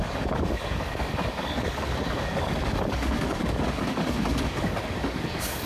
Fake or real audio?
fake